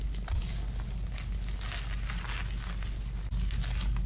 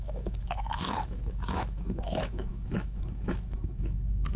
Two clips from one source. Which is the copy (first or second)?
second